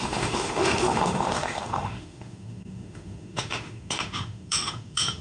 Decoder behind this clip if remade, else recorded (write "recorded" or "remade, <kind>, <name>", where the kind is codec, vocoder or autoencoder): remade, autoencoder, DAC-VAE